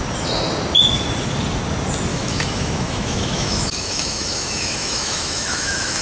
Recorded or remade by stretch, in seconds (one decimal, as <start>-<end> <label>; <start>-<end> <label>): 0.0-2.1 recorded; 2.1-6.0 remade